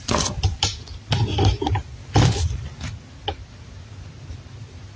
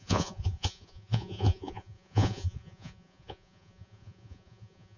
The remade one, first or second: second